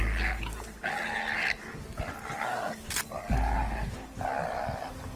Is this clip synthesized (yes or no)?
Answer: no